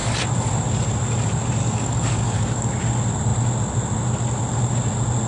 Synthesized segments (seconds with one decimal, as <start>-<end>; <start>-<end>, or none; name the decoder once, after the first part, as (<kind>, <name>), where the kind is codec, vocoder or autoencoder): 1.6-2.7 (codec, DAC)